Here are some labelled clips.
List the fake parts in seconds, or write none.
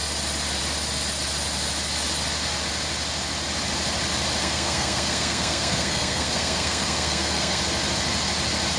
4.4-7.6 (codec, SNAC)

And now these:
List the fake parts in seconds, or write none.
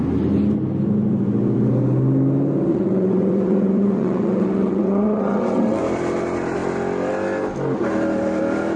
2.7-5.8 (vocoder, WaveNeXt)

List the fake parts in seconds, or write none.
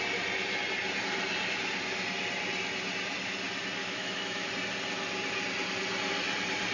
3.8-4.5 (autoencoder, DAC-VAE)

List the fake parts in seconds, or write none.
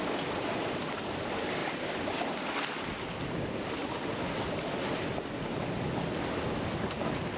none